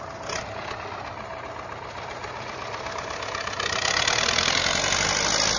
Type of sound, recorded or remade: recorded